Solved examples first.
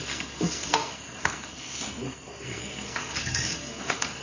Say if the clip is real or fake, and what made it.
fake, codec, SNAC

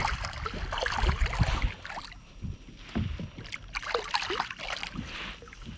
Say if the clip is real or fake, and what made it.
real